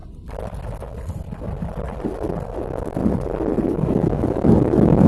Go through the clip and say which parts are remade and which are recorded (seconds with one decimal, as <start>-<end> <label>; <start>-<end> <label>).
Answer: 0.0-2.6 recorded; 2.6-3.0 remade; 3.0-3.6 recorded; 3.6-5.1 remade